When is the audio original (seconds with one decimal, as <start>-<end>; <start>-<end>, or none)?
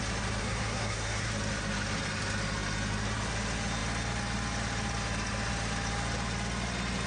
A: 0.0-0.4; 1.3-7.1